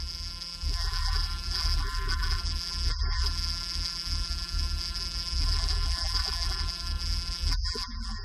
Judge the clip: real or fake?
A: fake